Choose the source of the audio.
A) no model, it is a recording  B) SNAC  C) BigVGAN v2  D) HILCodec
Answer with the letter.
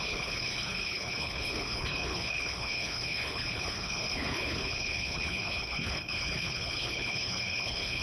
D